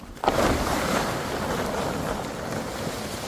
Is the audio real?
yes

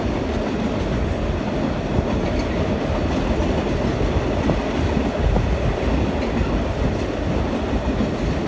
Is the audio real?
yes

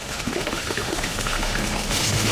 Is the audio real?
no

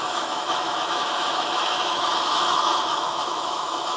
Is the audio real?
no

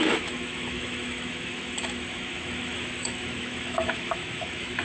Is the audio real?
no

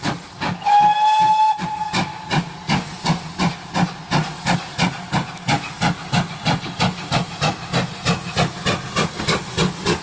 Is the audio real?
yes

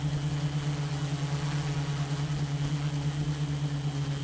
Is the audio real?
yes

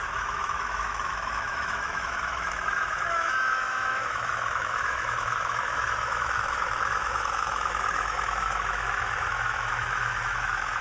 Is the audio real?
no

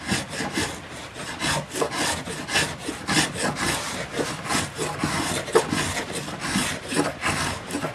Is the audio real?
yes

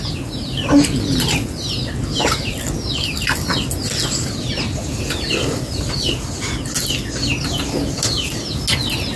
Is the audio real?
yes